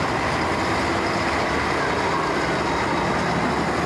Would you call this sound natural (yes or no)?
yes